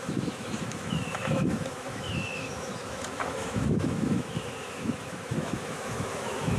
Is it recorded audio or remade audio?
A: remade